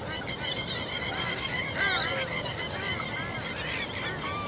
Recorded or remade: recorded